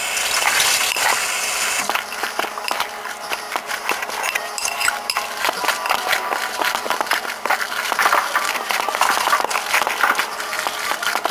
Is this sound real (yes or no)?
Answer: no